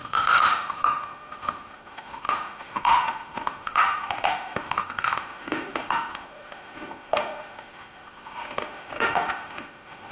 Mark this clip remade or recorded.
remade